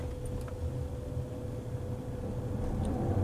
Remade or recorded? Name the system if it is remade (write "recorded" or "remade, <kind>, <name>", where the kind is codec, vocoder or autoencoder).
recorded